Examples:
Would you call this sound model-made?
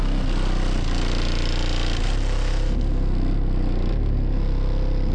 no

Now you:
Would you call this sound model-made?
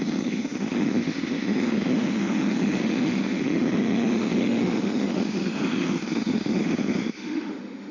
yes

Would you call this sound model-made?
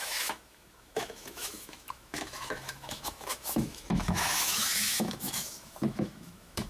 yes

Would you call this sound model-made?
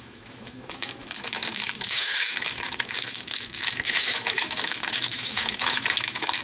yes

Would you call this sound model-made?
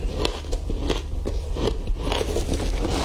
no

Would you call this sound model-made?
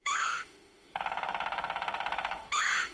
yes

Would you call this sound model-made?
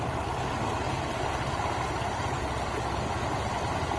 no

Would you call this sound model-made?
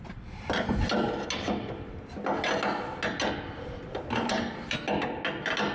no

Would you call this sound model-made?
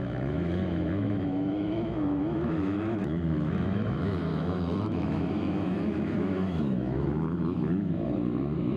yes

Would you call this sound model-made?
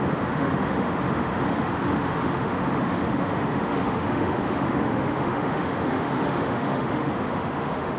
yes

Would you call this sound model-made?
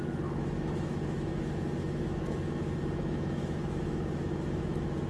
yes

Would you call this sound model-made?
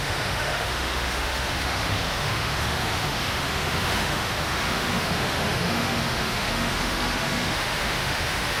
yes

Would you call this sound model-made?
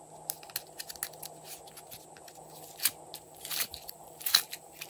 no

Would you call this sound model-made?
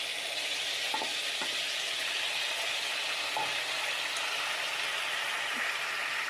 no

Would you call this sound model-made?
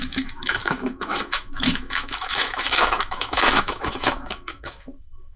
yes